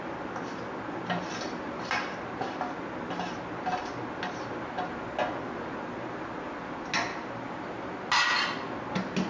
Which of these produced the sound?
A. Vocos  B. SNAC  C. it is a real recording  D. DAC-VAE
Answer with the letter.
C